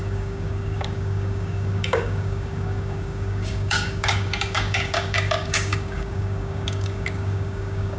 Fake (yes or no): yes